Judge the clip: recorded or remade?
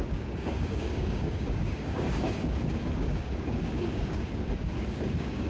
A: remade